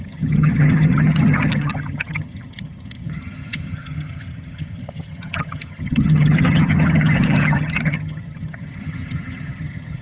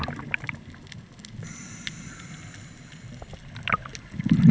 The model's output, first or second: first